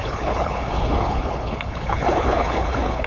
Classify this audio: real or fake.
fake